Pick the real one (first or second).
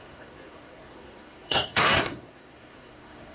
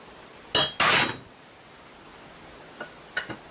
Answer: second